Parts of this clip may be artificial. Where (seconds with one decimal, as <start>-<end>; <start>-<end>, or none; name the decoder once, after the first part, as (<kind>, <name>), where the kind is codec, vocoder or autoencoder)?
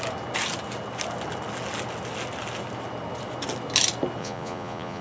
4.2-5.0 (vocoder, Vocos)